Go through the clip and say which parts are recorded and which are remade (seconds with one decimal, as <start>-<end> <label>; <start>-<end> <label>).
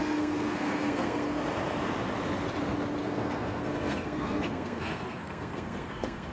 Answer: 0.0-1.4 remade; 1.4-3.0 recorded; 3.0-6.3 remade